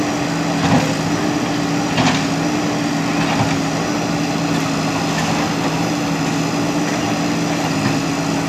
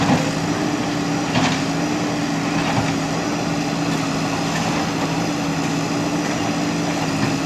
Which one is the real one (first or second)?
first